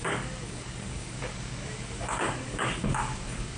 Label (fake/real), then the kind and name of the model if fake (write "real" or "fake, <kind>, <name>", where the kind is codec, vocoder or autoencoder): fake, codec, DAC